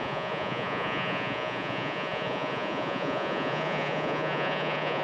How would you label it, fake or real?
fake